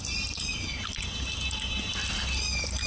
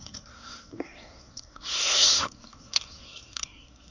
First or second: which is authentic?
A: first